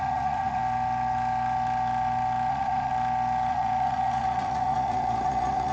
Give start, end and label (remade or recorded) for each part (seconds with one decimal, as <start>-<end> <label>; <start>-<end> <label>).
0.0-0.6 remade; 0.6-2.5 recorded; 2.5-2.9 remade; 2.9-3.5 recorded; 3.5-5.7 remade